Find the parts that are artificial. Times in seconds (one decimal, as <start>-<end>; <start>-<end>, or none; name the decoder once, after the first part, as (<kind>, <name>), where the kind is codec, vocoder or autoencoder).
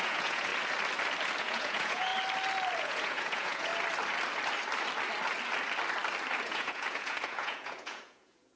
0.0-0.5 (vocoder, Vocos); 1.4-2.1; 2.8-3.7; 6.4-8.6